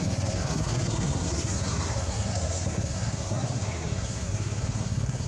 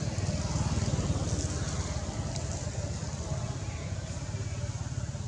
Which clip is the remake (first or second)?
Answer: first